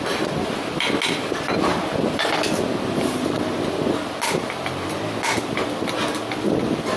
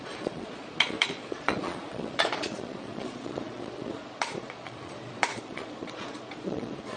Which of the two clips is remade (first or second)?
second